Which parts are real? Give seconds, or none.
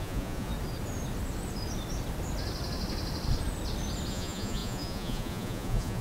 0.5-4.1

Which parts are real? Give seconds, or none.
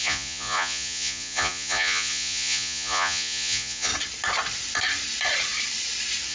3.9-6.3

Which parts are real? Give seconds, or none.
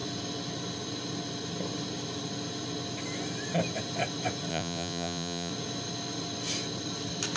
0.0-4.5; 5.5-7.4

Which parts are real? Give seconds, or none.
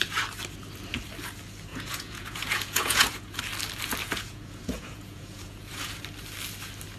0.0-1.7; 3.4-4.0; 5.9-7.0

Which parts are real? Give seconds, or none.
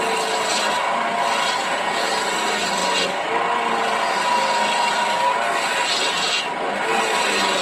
0.0-1.6; 2.1-7.6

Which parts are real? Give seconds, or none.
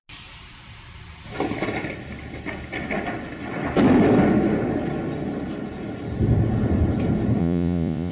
0.0-7.4